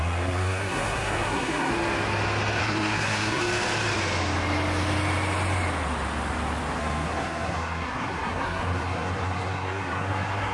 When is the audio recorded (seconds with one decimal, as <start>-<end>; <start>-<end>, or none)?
1.7-2.6; 3.4-6.8